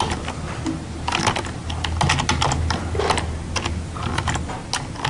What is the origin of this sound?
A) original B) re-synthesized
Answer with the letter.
A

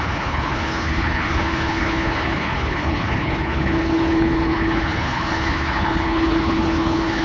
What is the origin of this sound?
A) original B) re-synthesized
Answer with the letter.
B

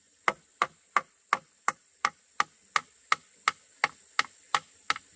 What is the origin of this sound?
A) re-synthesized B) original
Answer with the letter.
B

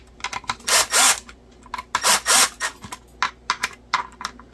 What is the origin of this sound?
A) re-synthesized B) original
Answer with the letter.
B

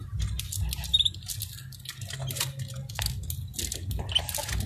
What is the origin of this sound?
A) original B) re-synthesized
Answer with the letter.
A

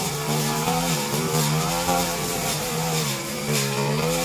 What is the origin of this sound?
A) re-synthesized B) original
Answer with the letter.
A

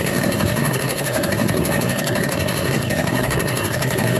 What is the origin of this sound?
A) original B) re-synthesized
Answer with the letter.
B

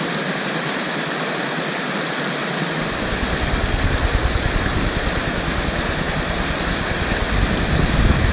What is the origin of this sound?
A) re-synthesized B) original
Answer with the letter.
B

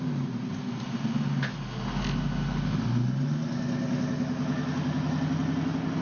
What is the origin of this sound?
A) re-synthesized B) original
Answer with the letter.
B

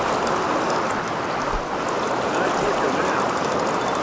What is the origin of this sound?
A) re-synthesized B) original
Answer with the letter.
B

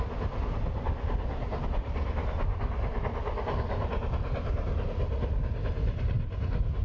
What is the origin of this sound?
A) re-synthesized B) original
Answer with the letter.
B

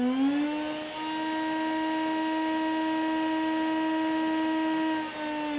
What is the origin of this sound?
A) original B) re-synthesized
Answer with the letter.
A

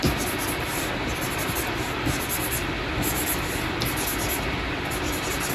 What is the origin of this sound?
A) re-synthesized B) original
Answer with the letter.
B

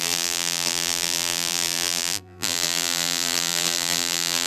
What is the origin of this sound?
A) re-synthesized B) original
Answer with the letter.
A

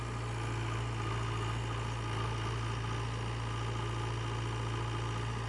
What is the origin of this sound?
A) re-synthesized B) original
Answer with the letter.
B